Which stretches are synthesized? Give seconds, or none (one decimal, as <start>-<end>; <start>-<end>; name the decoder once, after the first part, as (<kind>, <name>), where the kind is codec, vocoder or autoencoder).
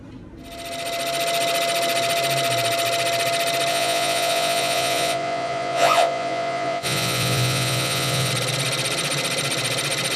3.7-8.3 (vocoder, Vocos)